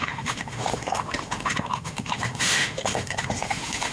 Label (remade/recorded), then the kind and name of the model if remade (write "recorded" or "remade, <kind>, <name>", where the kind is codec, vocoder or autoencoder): remade, autoencoder, DAC-VAE